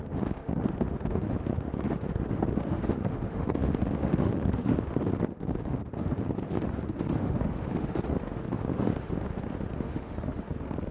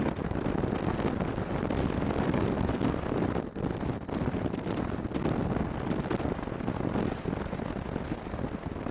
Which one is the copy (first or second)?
first